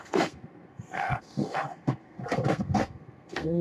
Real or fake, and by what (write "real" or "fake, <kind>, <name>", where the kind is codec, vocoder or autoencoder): fake, codec, SNAC